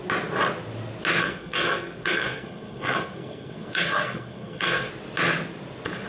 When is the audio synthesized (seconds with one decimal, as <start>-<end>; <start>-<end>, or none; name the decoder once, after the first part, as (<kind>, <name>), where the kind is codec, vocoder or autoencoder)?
1.2-4.9 (codec, SNAC)